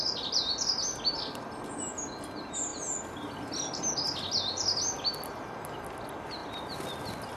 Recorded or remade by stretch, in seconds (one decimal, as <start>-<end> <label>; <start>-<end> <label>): 0.0-7.4 recorded